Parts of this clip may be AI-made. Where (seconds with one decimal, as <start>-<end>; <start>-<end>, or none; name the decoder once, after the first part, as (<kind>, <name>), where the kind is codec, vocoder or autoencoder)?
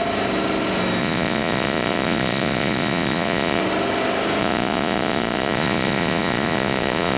1.0-3.6 (vocoder, Vocos); 4.4-7.2